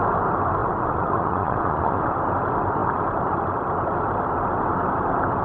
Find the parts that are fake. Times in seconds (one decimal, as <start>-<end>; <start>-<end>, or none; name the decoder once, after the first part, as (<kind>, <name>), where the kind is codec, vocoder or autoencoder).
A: 0.6-2.1 (vocoder, Vocos)